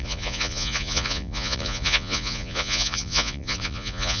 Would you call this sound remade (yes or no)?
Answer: yes